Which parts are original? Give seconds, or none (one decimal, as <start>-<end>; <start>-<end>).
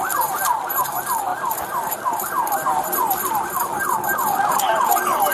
0.0-1.3; 3.2-5.3